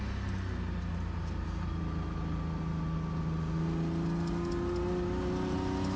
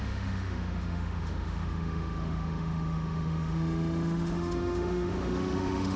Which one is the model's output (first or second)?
second